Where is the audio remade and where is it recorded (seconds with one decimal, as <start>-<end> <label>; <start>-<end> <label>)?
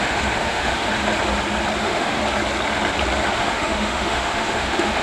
0.0-1.0 remade; 1.0-1.8 recorded; 1.8-2.2 remade; 2.2-3.4 recorded; 3.4-5.0 remade